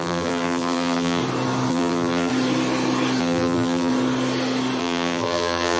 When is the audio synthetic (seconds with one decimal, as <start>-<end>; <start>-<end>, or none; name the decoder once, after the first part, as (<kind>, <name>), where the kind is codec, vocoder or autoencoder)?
0.0-1.2 (vocoder, BigVGAN v2); 1.7-2.3; 3.2-3.9; 4.8-5.8